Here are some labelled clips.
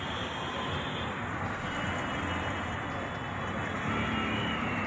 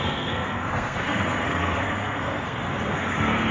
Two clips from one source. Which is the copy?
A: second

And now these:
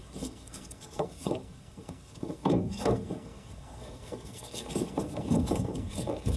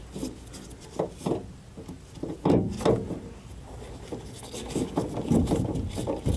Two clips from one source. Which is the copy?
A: first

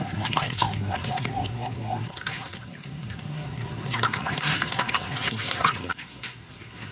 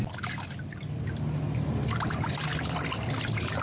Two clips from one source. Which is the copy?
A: first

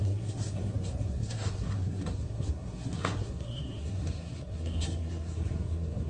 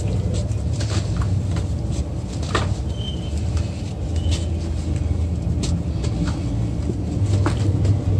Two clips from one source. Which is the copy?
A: first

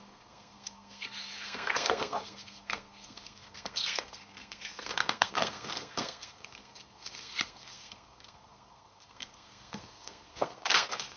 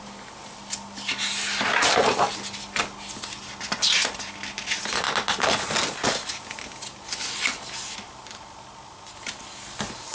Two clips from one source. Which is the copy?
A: first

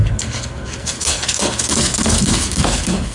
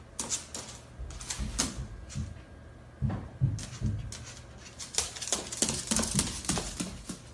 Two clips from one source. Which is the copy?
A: first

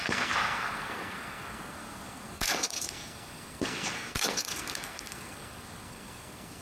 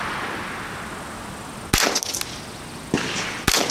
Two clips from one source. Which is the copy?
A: first